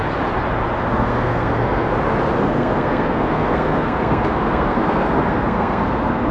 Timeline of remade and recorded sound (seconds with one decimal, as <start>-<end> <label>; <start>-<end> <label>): 0.0-0.9 recorded; 0.9-1.9 remade; 1.9-2.4 recorded; 2.4-6.3 remade